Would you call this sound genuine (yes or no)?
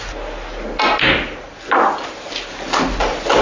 yes